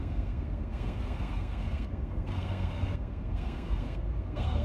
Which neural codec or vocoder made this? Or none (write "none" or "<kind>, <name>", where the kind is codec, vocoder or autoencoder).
codec, SNAC